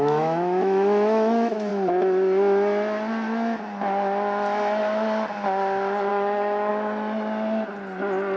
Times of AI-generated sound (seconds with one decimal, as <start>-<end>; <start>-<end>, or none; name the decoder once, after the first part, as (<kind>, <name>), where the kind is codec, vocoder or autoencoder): 0.0-1.7 (autoencoder, DAC-VAE); 6.1-6.7